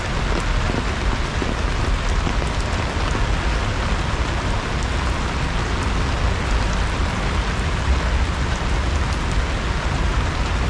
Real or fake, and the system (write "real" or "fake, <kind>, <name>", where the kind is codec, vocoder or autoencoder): real